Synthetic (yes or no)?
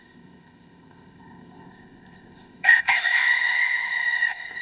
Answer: yes